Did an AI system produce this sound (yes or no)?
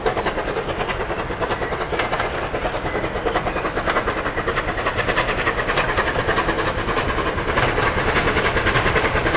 no